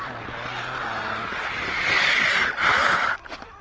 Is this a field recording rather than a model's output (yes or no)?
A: yes